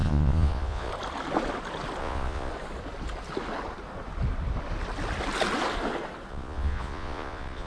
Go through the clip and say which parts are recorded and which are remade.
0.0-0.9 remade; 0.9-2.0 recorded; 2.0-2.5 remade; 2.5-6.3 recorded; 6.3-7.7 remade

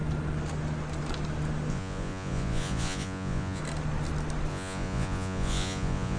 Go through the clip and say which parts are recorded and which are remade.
0.0-1.7 recorded; 1.7-3.6 remade; 3.6-4.5 recorded; 4.5-6.2 remade

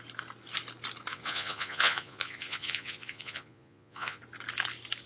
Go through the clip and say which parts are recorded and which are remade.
0.0-1.1 recorded; 1.1-4.2 remade; 4.2-5.1 recorded

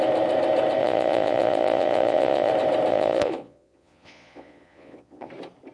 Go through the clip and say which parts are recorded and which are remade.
0.0-0.8 recorded; 0.8-2.5 remade; 2.5-2.9 recorded; 2.9-5.3 remade; 5.3-5.7 recorded

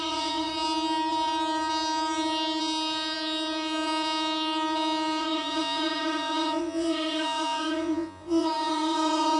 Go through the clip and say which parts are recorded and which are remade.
0.0-0.5 remade; 0.5-5.2 recorded; 5.2-9.4 remade

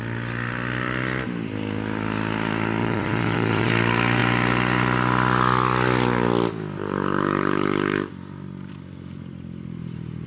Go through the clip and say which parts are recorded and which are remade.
0.0-2.8 recorded; 2.8-3.7 remade; 3.7-10.3 recorded

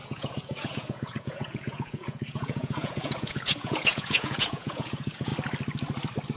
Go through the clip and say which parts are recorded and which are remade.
0.0-5.3 remade; 5.3-6.4 recorded

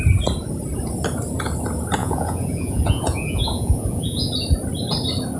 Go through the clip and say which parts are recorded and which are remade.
0.0-2.0 recorded; 2.0-4.3 remade; 4.3-5.4 recorded